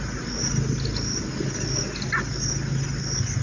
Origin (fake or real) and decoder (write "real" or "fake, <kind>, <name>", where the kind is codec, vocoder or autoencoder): real